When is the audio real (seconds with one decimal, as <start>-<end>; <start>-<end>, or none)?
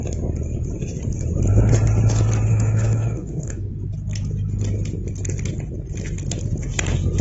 0.0-2.5; 3.7-7.2